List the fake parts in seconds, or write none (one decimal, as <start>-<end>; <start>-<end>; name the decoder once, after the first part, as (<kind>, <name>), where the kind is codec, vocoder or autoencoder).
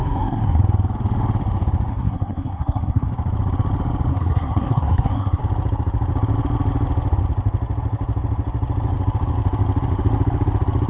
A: 0.0-0.6 (codec, SNAC); 1.9-3.1; 4.1-5.4